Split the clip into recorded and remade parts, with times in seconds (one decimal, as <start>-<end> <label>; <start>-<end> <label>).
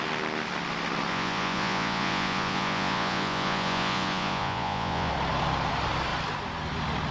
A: 0.0-1.1 recorded; 1.1-5.1 remade; 5.1-7.1 recorded